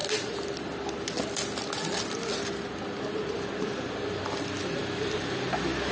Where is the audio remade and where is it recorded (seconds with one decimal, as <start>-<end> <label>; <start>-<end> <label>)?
0.0-5.9 recorded